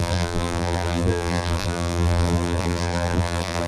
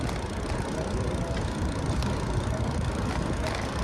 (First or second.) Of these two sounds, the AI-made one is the first